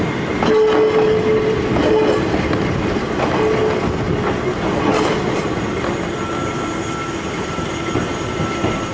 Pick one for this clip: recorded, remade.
recorded